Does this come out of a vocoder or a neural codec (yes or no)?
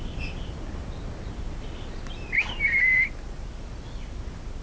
no